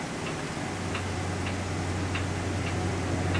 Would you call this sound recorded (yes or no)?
yes